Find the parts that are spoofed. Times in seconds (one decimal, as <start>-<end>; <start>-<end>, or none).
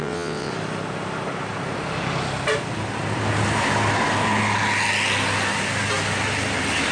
0.0-0.5